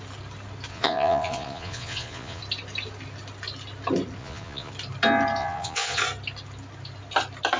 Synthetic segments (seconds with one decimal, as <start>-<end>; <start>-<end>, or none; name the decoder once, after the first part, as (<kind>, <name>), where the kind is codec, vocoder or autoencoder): 0.7-2.4 (vocoder, Vocos); 4.2-4.7; 5.4-6.0